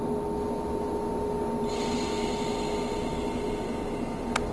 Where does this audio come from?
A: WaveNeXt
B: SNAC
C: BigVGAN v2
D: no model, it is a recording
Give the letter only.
D